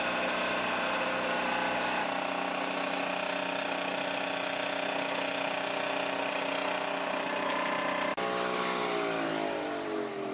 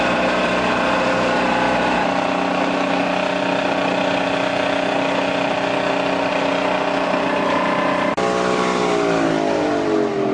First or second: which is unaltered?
first